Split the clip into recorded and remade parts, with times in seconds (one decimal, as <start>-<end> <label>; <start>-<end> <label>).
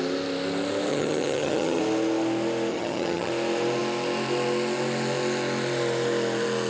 0.0-0.9 recorded; 0.9-1.8 remade; 1.8-2.7 recorded; 2.7-3.3 remade; 3.3-6.7 recorded